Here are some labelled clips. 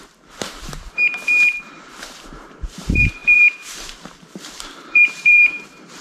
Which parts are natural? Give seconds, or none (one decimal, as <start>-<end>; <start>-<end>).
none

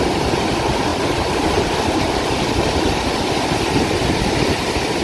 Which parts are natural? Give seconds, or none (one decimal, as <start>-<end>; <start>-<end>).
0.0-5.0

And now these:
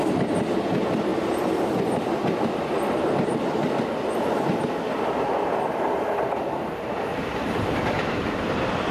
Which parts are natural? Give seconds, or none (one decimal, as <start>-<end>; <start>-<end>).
0.0-7.1; 7.8-8.9

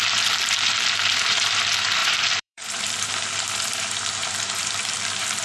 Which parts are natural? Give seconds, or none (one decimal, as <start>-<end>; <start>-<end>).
none

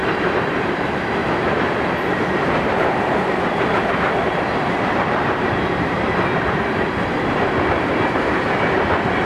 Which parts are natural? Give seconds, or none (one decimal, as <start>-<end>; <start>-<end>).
0.7-1.2; 6.0-9.3

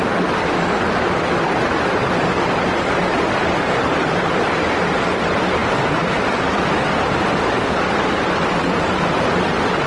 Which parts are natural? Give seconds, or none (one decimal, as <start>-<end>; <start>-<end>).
0.0-9.9

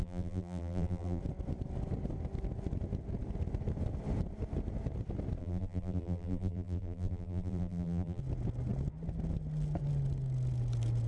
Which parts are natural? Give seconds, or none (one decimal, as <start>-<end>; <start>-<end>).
1.2-5.4; 8.2-11.1